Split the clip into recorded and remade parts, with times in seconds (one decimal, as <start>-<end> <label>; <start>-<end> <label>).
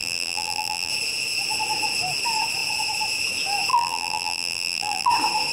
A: 0.0-0.9 remade; 0.9-3.7 recorded; 3.7-5.1 remade; 5.1-5.5 recorded